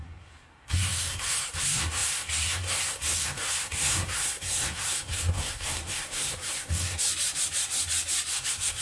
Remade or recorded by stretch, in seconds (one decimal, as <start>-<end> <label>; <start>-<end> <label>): 0.0-7.1 remade; 7.1-8.3 recorded; 8.3-8.8 remade